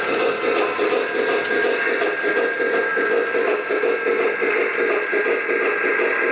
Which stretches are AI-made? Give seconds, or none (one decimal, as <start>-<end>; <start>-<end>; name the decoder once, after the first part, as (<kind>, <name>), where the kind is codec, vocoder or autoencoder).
none